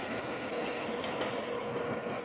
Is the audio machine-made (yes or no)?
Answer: no